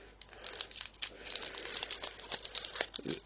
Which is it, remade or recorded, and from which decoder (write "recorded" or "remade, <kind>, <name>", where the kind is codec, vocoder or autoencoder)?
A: remade, vocoder, BigVGAN v2